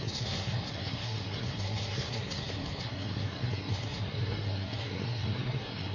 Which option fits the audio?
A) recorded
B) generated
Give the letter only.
B